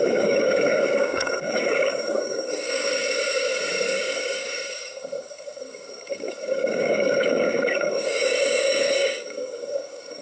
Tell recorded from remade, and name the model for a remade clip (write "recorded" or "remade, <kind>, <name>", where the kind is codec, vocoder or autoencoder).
remade, codec, DAC